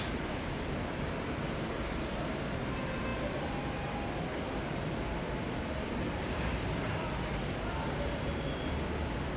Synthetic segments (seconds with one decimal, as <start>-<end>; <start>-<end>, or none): none